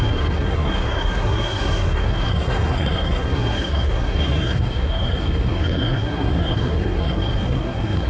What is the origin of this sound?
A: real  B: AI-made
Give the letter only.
B